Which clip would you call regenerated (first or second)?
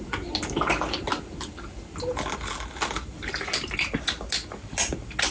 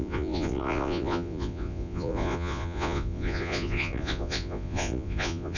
second